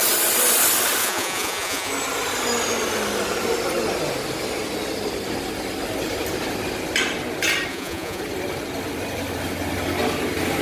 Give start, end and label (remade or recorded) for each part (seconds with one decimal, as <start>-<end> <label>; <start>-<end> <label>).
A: 0.0-1.0 recorded; 1.0-1.9 remade; 1.9-7.7 recorded; 7.7-8.2 remade; 8.2-10.6 recorded